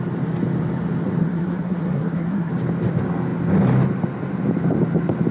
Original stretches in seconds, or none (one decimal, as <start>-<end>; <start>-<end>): 0.0-1.2; 2.5-5.3